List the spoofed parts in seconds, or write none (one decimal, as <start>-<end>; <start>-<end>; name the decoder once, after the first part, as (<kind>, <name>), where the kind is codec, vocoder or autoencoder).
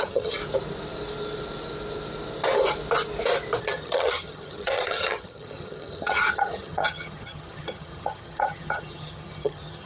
0.0-0.4 (vocoder, HiFi-GAN); 3.6-9.9